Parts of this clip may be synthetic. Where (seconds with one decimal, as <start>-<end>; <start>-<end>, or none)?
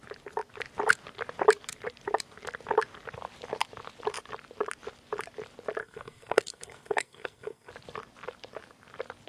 5.8-7.7